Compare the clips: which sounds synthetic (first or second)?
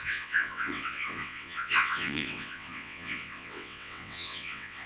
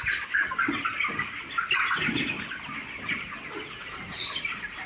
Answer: first